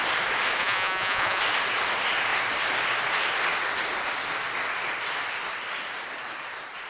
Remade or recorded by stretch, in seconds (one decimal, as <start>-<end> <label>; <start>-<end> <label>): 0.0-0.6 recorded; 0.6-1.4 remade; 1.4-6.9 recorded